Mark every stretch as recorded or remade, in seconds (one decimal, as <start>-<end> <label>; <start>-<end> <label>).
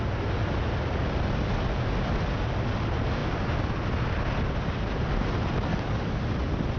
0.0-5.7 recorded; 5.7-6.2 remade; 6.2-6.8 recorded